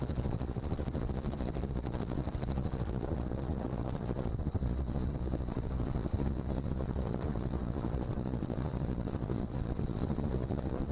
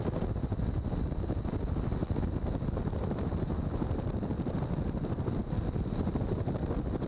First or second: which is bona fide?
second